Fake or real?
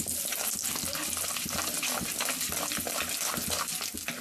real